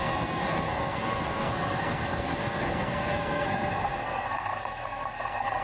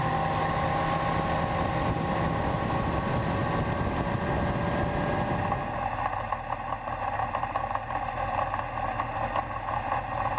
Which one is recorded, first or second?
second